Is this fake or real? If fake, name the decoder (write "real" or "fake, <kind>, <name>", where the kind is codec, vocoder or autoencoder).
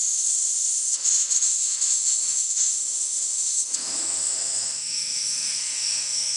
fake, autoencoder, DAC-VAE